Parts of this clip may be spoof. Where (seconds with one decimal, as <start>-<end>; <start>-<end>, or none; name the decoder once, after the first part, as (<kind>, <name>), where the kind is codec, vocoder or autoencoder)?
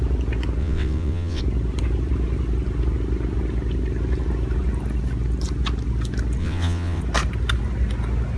0.6-1.4 (vocoder, WaveNeXt); 6.4-7.0